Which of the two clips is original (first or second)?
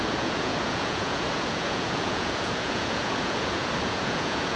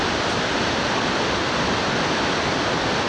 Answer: second